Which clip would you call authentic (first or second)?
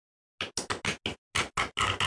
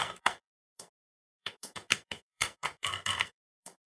first